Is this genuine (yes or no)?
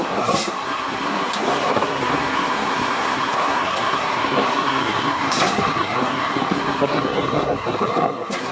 no